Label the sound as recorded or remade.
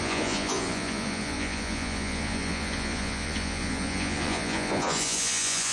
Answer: remade